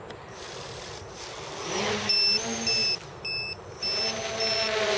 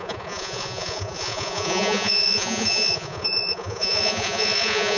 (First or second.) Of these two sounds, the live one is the first